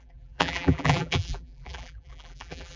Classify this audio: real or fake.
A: fake